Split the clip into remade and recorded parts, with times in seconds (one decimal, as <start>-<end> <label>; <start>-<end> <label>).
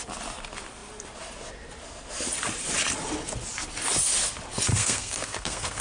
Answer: 0.0-4.7 recorded; 4.7-5.8 remade